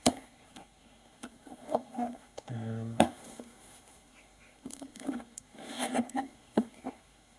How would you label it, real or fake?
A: fake